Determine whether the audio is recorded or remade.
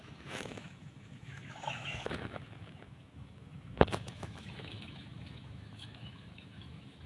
remade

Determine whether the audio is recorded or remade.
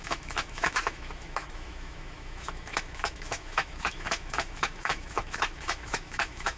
remade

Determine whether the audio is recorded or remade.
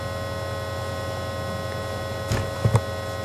recorded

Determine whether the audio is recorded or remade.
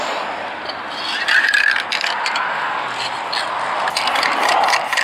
recorded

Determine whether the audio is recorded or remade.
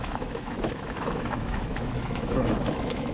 remade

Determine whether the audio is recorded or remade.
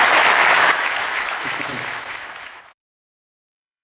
remade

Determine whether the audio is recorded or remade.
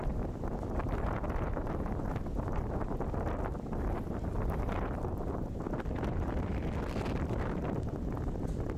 recorded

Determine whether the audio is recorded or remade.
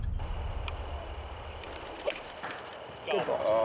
recorded